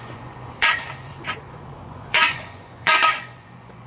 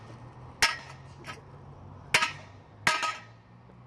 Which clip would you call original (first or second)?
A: second